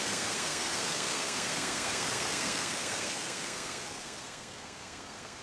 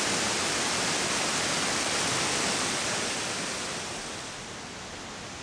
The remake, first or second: first